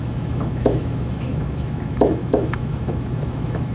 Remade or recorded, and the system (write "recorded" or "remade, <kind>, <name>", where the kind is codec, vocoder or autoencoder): remade, autoencoder, DAC-VAE